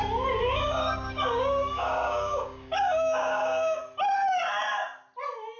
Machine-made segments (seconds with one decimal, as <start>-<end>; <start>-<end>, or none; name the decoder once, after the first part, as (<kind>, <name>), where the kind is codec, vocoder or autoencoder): 0.4-3.8 (codec, DAC)